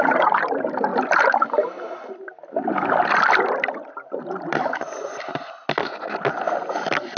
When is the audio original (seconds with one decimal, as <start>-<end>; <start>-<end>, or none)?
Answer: 0.0-0.9; 5.2-7.2